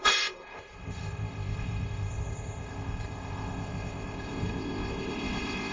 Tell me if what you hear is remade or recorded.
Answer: remade